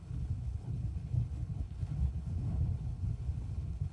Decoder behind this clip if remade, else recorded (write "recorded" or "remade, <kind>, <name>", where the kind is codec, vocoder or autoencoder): remade, codec, HILCodec